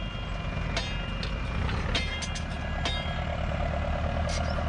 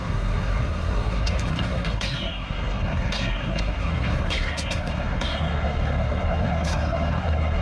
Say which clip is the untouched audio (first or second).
first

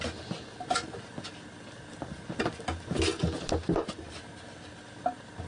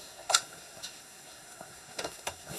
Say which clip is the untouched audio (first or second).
first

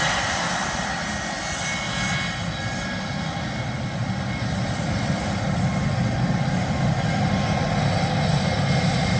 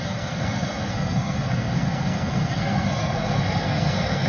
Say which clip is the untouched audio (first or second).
first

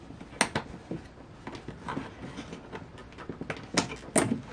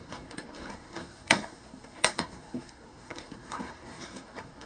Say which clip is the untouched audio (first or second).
first